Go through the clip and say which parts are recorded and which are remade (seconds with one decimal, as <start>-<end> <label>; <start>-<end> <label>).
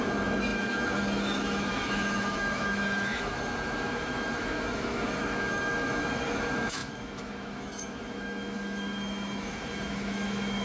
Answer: 0.0-10.6 remade